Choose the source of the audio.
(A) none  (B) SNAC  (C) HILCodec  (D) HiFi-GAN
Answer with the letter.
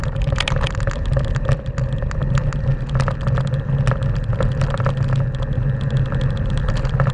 A